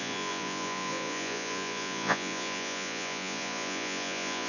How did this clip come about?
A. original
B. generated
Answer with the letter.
B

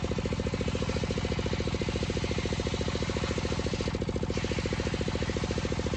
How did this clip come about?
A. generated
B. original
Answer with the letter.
B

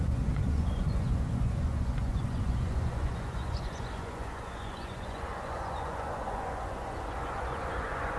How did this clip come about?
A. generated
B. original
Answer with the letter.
A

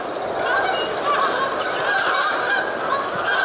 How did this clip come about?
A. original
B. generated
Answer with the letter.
A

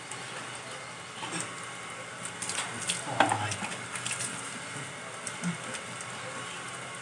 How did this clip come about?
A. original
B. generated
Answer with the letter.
A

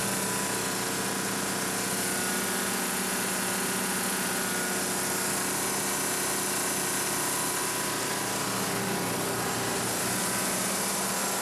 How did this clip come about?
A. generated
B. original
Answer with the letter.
B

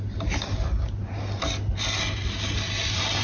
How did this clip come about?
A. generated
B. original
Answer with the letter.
B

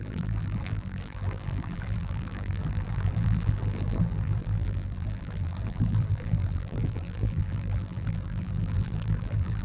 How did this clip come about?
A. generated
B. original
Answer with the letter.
A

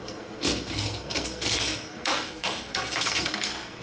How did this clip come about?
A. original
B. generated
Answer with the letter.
B